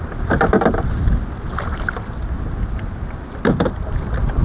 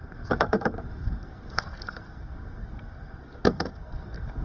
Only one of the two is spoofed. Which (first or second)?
second